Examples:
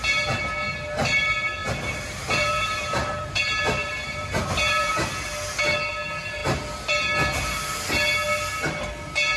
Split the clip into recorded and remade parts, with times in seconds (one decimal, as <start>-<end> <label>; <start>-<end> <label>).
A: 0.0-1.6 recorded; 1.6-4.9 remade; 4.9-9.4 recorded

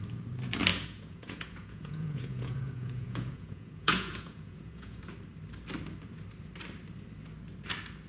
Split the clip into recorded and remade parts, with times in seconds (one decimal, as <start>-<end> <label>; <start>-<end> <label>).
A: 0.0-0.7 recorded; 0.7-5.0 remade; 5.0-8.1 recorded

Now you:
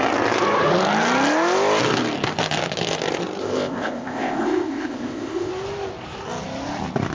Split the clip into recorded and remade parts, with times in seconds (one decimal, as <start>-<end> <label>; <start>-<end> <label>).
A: 0.0-3.4 recorded; 3.4-5.5 remade; 5.5-7.1 recorded